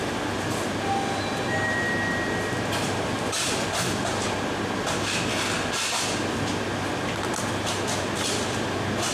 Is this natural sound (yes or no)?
yes